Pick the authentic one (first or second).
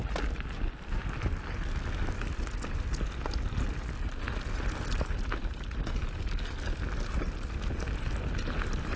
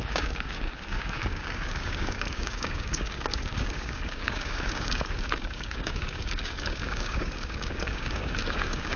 first